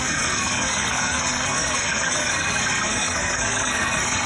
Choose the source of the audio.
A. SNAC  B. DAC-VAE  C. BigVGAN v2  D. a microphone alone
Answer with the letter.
A